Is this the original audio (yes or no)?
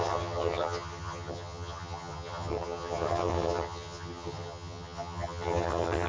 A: no